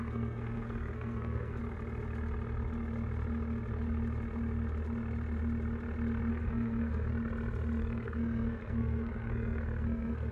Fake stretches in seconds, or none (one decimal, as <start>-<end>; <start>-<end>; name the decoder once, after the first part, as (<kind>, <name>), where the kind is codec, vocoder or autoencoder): 0.0-1.6 (codec, SNAC); 6.3-7.1; 7.8-10.3